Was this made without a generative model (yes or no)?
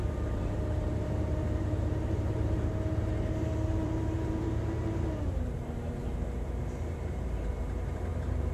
no